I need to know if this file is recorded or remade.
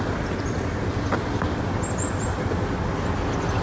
recorded